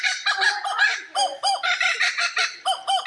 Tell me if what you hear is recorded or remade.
recorded